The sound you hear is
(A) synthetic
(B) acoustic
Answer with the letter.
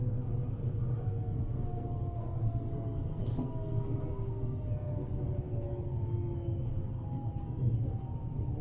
A